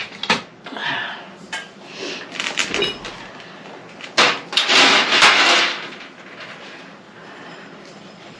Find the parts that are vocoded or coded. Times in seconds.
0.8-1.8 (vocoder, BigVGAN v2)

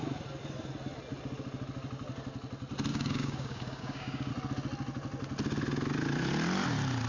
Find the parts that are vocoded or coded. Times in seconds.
2.9-4.3 (codec, DAC)

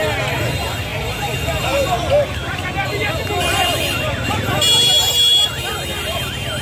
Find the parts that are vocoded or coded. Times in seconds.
none

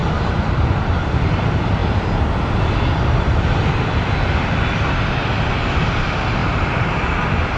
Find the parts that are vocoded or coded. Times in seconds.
0.0-0.6 (vocoder, BigVGAN v2); 1.8-4.1; 6.4-7.0

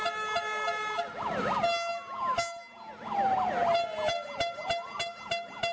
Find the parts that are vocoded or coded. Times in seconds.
none

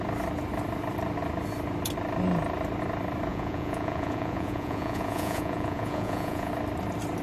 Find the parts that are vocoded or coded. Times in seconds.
3.3-6.5 (vocoder, Vocos)

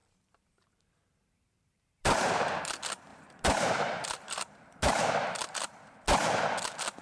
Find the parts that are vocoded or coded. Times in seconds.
0.0-2.6 (vocoder, BigVGAN v2); 3.1-5.1